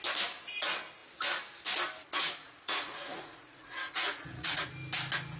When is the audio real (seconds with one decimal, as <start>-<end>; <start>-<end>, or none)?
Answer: 0.0-2.2; 4.7-5.4